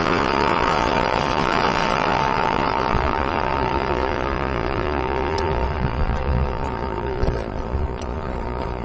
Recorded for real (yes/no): no